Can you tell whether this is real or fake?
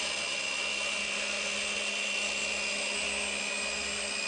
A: real